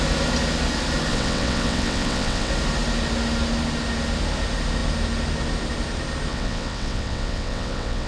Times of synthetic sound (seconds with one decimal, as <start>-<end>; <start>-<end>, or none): 1.1-2.5; 6.3-8.1